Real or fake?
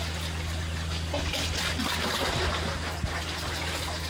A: real